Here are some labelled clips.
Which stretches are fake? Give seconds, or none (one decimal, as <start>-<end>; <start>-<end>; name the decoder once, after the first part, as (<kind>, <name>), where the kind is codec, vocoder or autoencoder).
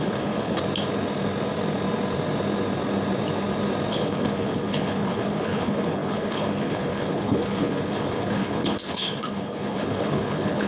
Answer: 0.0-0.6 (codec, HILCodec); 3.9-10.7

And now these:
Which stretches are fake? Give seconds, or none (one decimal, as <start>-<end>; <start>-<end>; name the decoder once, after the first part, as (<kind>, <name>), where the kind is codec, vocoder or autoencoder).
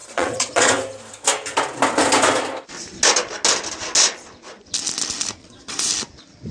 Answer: 0.0-0.7 (vocoder, Vocos); 5.4-5.9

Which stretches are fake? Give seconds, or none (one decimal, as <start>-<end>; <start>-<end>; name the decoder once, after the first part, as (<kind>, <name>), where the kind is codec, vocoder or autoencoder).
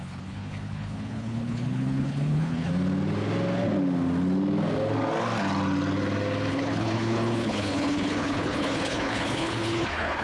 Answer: 0.0-2.7 (codec, HILCodec); 6.5-10.2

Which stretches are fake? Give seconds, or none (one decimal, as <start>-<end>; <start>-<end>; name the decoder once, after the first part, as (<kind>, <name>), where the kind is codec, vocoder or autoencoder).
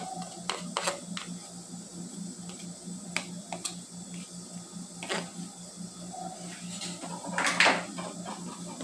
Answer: none